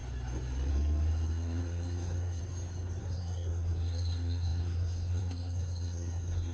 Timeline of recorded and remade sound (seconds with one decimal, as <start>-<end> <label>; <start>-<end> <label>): 0.0-0.7 recorded; 0.7-2.4 remade; 2.4-3.0 recorded; 3.0-6.5 remade